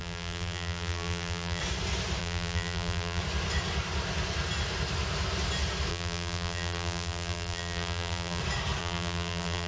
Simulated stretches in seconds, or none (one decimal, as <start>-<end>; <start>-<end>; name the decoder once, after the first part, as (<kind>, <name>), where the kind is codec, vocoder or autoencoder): 0.0-1.6 (vocoder, BigVGAN v2); 2.2-3.2; 5.9-8.4; 8.8-9.7